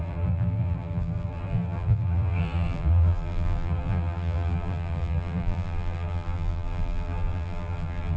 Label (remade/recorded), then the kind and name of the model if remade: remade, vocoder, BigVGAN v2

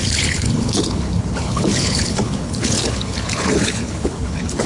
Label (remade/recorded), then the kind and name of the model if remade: remade, codec, HILCodec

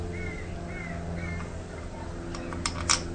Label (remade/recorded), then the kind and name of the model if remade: recorded